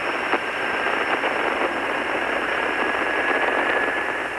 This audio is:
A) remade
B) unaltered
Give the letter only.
B